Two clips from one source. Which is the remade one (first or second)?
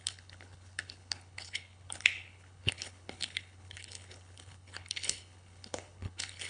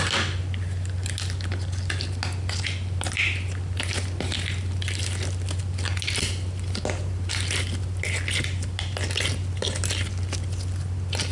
first